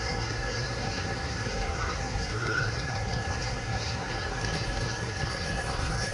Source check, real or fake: fake